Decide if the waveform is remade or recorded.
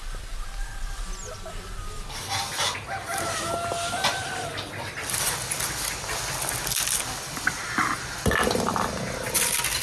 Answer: recorded